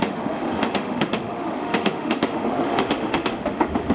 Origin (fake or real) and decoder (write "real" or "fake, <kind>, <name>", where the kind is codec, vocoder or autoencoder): fake, autoencoder, DAC-VAE